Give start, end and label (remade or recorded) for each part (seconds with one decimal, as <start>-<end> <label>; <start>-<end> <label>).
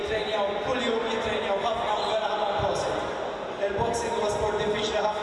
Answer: 0.0-5.2 recorded